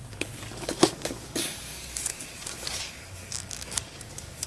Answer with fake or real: fake